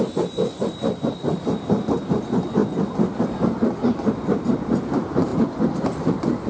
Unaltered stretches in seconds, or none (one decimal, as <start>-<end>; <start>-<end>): 2.6-3.2